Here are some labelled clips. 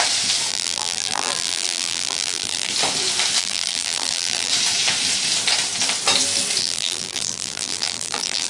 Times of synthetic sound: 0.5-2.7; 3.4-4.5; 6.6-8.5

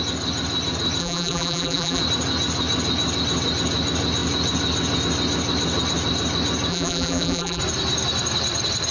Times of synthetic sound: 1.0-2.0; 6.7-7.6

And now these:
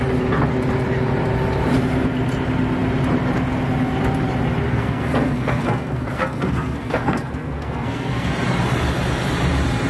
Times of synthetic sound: 4.7-8.3

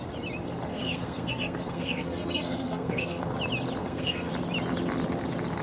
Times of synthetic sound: 0.7-3.2; 3.8-4.3

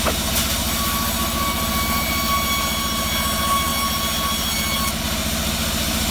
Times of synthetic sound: none

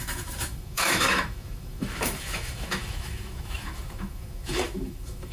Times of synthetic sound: 0.0-5.3

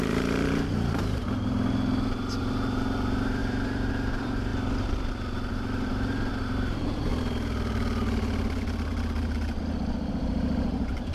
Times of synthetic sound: 0.0-4.5; 5.5-7.1; 10.1-11.1

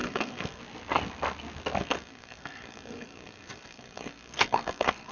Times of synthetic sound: 0.0-0.6; 1.8-5.1